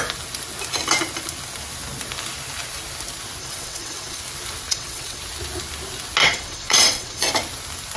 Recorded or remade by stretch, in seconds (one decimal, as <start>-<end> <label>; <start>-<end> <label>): 0.0-3.4 recorded; 3.4-4.2 remade; 4.2-4.7 recorded; 4.7-5.2 remade; 5.2-6.2 recorded; 6.2-7.3 remade; 7.3-8.0 recorded